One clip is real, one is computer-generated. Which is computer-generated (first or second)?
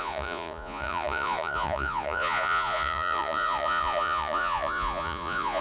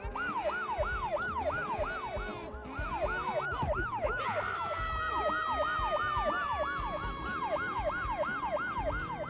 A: first